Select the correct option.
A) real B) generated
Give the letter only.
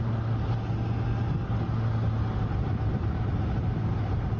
A